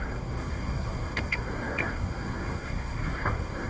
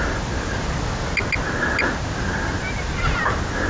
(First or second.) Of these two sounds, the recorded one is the second